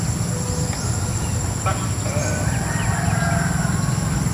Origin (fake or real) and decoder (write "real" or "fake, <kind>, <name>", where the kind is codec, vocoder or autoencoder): real